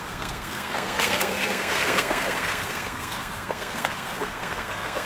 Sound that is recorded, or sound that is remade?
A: remade